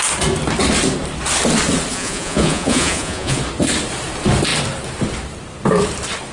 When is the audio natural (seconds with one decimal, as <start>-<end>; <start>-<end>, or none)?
0.0-1.9; 3.4-6.3